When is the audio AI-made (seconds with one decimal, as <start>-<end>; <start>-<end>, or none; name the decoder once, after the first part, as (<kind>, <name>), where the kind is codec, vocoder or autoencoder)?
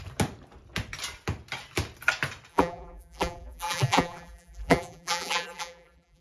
2.5-6.2 (vocoder, BigVGAN v2)